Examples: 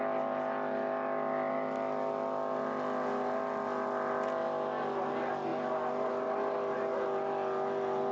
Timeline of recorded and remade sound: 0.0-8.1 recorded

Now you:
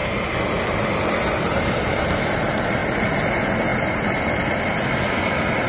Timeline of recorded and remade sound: 0.0-2.8 recorded; 2.8-3.3 remade; 3.3-5.7 recorded

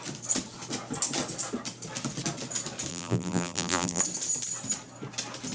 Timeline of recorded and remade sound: 0.0-2.9 recorded; 2.9-4.0 remade; 4.0-5.5 recorded

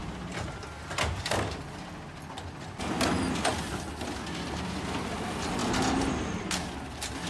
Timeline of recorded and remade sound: 0.0-1.6 remade; 1.6-3.5 recorded; 3.5-4.2 remade; 4.2-7.3 recorded

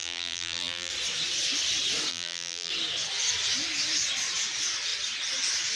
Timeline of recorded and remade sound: 0.0-0.9 remade; 0.9-2.1 recorded; 2.1-2.7 remade; 2.7-5.8 recorded

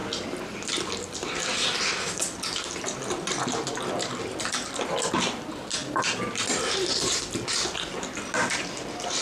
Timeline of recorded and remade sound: 0.0-9.2 recorded

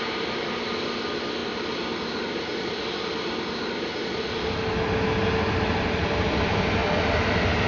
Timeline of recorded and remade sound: 0.0-7.7 recorded

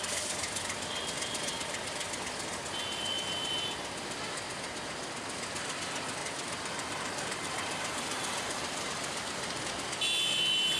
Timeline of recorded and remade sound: 0.0-6.2 recorded; 6.2-9.6 remade; 9.6-10.8 recorded